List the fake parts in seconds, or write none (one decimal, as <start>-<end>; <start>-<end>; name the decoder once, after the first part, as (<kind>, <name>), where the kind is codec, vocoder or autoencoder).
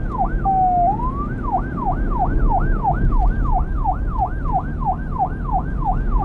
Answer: none